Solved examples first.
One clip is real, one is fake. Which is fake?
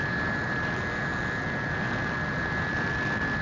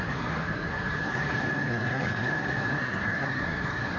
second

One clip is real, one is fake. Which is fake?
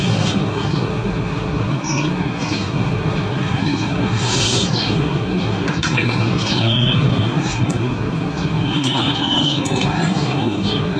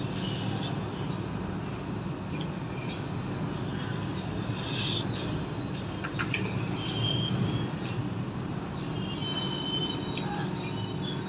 first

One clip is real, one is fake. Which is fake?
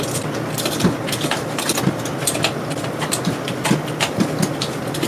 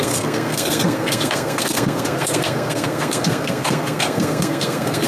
second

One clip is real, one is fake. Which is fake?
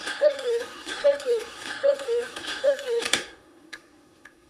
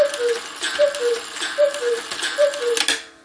first